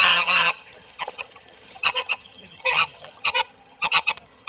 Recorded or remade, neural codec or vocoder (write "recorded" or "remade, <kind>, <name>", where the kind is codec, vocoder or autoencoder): remade, vocoder, HiFi-GAN